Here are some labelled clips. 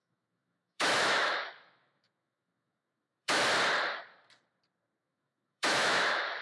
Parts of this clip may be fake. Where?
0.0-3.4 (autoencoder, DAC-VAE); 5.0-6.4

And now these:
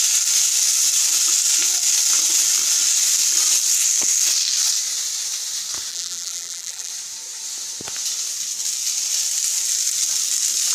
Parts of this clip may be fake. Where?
5.9-6.9 (vocoder, BigVGAN v2)